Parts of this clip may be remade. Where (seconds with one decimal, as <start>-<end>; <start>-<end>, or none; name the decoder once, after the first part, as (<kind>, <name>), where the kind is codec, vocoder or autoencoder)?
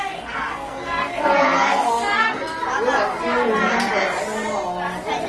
0.0-2.4 (codec, SNAC)